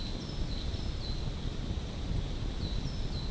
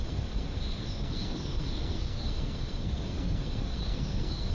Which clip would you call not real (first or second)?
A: second